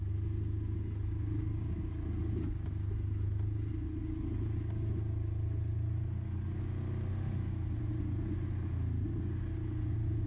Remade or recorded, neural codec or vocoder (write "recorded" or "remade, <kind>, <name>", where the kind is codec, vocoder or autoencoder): recorded